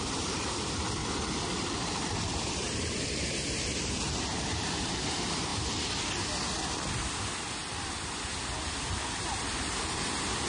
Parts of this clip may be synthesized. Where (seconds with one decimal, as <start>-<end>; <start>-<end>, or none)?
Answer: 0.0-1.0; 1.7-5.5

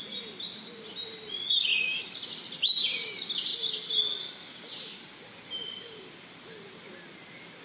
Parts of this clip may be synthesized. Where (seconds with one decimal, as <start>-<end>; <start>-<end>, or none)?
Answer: 1.7-2.5

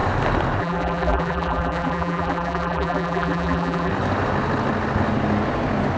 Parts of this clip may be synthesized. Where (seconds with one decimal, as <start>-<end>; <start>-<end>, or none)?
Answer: 0.6-3.9

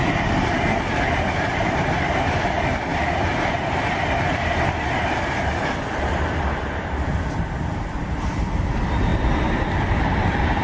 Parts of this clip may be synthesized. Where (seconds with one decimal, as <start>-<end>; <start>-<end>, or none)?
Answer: 0.0-2.9; 3.5-10.6